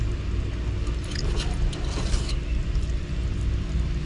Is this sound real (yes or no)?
yes